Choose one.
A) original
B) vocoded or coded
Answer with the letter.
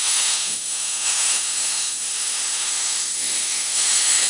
B